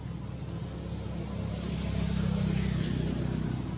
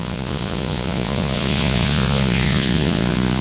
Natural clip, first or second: first